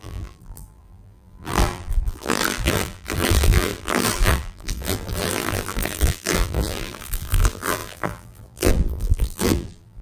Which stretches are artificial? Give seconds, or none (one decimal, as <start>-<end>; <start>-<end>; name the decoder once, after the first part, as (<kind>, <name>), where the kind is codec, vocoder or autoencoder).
0.0-10.0 (vocoder, BigVGAN v2)